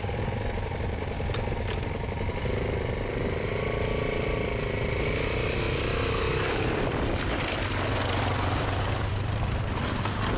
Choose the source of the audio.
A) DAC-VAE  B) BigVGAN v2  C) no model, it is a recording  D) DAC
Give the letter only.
B